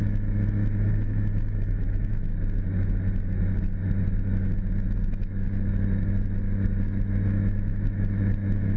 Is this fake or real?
fake